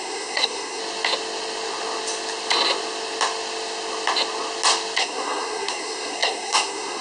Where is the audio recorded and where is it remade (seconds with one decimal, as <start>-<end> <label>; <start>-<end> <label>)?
0.0-0.8 remade; 0.8-5.0 recorded; 5.0-7.0 remade